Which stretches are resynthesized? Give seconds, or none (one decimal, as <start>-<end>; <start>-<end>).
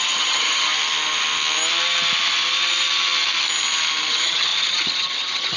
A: 0.0-0.7; 4.1-5.6